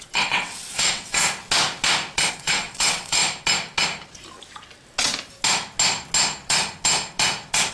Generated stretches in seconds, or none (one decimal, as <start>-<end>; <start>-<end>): 0.0-1.2; 2.3-3.2